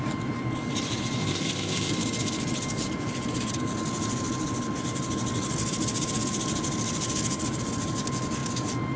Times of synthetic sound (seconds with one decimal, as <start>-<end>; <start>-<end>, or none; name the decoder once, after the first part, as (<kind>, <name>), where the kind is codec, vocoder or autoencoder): 1.2-1.9 (codec, ZipCodec)